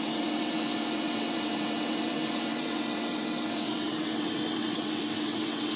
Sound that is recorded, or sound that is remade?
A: remade